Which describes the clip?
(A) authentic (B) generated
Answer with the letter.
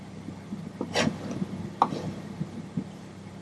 A